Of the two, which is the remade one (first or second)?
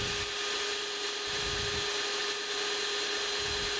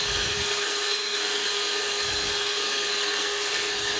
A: second